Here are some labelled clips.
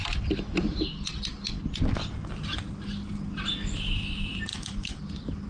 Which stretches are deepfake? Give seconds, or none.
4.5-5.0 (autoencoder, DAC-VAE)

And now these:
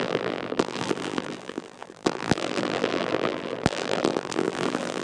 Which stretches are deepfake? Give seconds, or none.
0.0-5.0 (vocoder, BigVGAN v2)

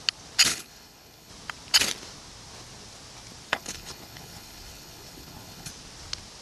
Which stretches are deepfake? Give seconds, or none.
0.5-1.3 (codec, HILCodec); 3.5-5.7

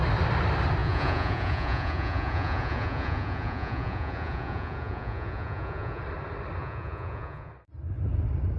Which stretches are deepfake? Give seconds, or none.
0.8-6.0 (vocoder, Vocos); 6.6-7.5

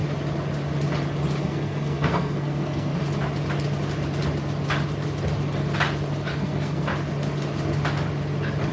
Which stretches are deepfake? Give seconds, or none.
1.4-2.9 (codec, SNAC); 6.4-6.9

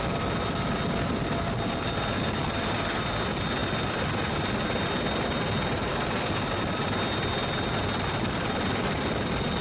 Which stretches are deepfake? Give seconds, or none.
none

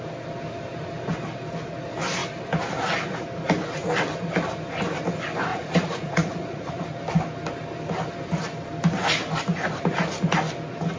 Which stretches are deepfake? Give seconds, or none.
5.5-6.8 (vocoder, Vocos)

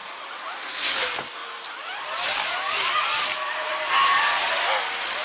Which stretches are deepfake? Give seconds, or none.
0.0-0.9 (vocoder, BigVGAN v2); 3.0-4.2